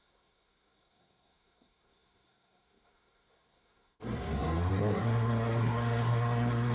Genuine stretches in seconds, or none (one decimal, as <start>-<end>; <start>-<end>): none